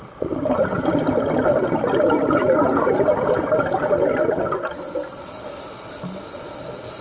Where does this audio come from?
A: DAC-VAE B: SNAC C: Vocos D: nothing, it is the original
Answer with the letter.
D